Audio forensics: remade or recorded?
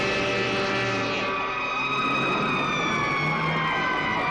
recorded